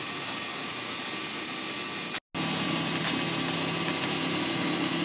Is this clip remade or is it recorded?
recorded